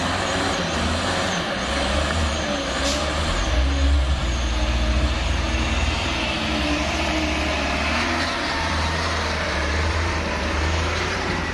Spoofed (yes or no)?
yes